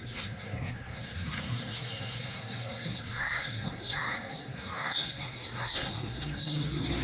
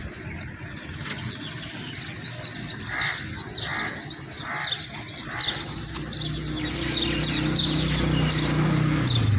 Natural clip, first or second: second